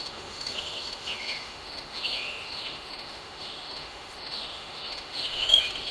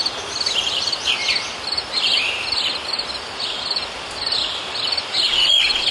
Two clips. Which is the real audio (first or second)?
second